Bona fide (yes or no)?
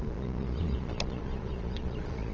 no